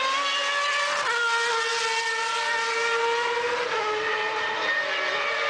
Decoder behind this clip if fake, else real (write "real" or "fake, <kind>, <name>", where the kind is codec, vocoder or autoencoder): real